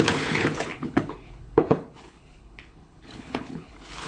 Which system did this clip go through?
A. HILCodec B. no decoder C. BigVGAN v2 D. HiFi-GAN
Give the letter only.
A